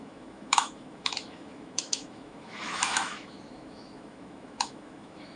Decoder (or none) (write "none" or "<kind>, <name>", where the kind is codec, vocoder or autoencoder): autoencoder, DAC-VAE